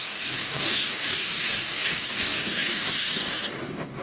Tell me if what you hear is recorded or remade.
remade